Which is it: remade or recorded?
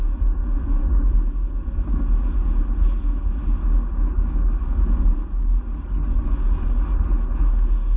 recorded